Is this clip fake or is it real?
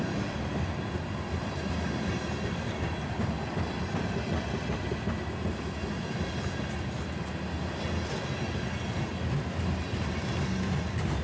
real